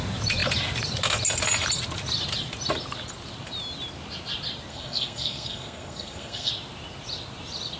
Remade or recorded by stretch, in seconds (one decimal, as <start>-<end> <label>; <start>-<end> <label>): 0.0-4.7 recorded; 4.7-6.5 remade; 6.5-7.8 recorded

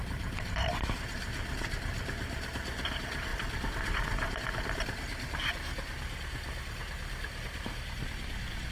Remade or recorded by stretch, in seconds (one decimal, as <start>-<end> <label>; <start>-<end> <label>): 0.0-8.7 recorded